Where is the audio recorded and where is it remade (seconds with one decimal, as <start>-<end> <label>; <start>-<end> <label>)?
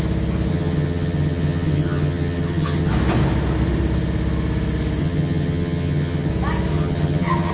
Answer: 0.0-0.5 recorded; 0.5-2.9 remade; 2.9-5.0 recorded; 5.0-6.3 remade; 6.3-6.7 recorded; 6.7-7.5 remade